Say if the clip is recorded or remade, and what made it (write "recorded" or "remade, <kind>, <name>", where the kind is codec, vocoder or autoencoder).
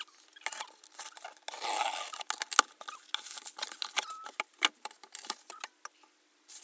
recorded